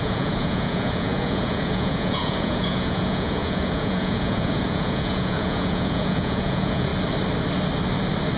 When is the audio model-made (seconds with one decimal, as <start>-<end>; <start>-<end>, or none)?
0.0-6.9